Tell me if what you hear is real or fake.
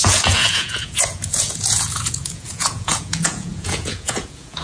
fake